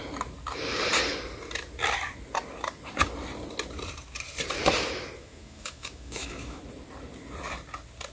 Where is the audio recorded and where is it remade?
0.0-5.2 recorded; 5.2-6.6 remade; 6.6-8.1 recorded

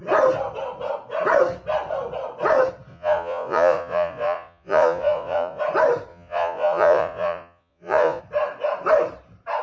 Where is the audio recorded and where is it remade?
0.0-2.9 recorded; 2.9-5.6 remade; 5.6-6.1 recorded; 6.1-8.2 remade; 8.2-9.6 recorded

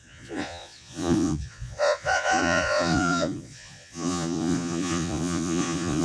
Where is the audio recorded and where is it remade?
0.0-6.0 remade

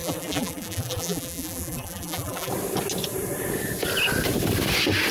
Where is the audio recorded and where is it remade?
0.0-2.5 remade; 2.5-5.1 recorded

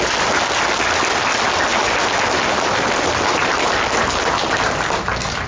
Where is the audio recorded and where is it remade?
0.0-5.5 recorded

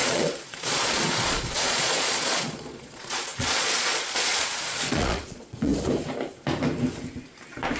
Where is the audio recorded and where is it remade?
0.0-5.7 remade; 5.7-7.8 recorded

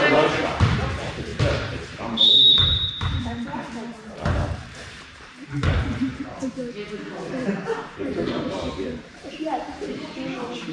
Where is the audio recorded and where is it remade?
0.0-6.1 remade; 6.1-7.8 recorded; 7.8-10.7 remade

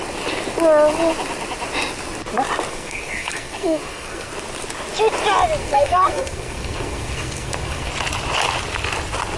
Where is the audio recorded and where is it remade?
0.0-2.7 recorded; 2.7-4.3 remade; 4.3-5.6 recorded; 5.6-7.9 remade; 7.9-9.4 recorded